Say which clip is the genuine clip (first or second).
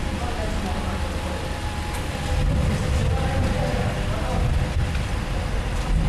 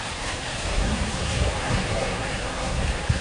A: first